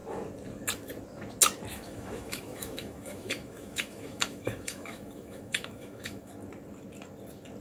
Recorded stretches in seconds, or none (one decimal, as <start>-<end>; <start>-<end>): 0.0-1.7; 6.3-7.6